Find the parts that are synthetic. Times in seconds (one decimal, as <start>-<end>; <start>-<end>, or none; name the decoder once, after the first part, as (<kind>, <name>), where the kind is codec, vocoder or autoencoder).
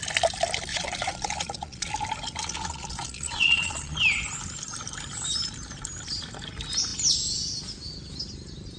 0.7-1.9 (vocoder, Vocos); 2.4-4.0